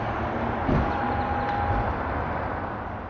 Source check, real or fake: real